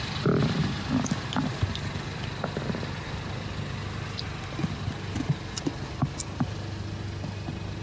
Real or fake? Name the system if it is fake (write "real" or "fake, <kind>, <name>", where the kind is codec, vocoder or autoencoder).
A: real